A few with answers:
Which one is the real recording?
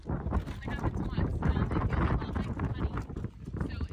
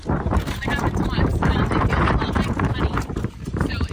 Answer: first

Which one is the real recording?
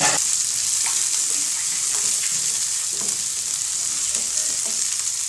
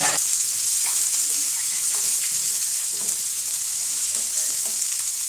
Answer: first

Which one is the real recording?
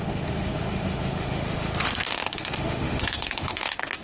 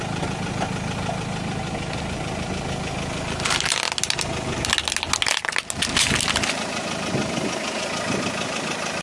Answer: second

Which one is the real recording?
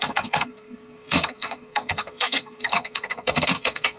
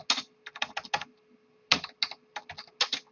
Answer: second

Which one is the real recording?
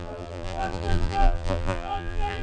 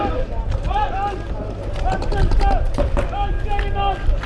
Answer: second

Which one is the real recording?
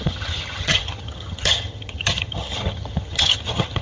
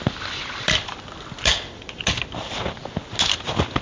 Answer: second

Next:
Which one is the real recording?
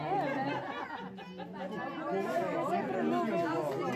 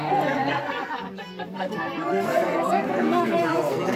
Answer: first